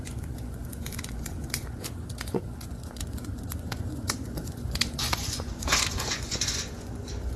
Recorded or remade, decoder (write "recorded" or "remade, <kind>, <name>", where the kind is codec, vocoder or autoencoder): remade, vocoder, Vocos